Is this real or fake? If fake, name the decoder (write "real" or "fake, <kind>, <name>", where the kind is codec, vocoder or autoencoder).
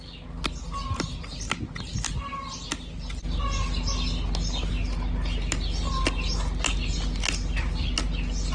real